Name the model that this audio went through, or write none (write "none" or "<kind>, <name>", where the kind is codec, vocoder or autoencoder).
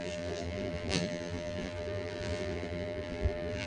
vocoder, BigVGAN v2